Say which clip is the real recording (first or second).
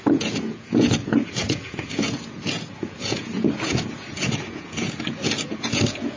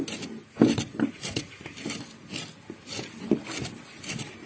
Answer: second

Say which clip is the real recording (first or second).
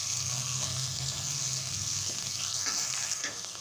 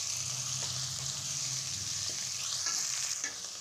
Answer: second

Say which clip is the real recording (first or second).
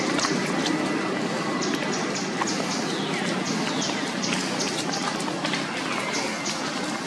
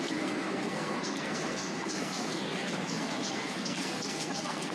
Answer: first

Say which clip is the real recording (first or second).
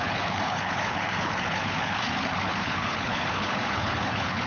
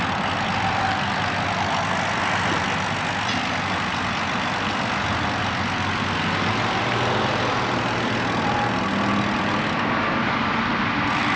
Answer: second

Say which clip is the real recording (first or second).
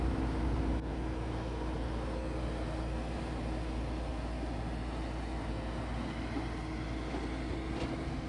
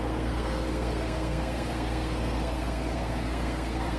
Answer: first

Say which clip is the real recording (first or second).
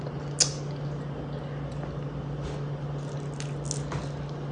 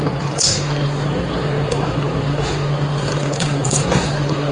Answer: first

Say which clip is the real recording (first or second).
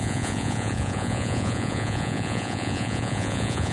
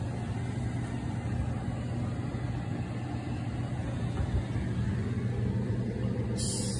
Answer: second